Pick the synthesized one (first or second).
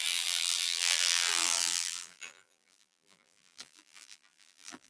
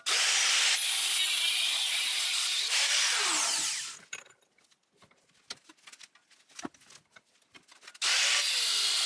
first